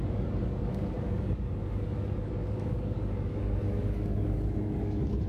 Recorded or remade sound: remade